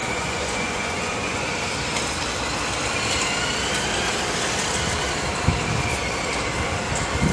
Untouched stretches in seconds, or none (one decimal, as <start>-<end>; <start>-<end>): 1.5-7.3